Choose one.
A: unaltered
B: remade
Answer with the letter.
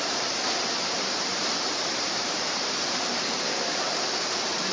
B